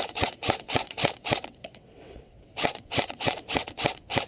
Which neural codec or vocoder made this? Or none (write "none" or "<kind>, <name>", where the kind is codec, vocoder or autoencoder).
vocoder, WaveNeXt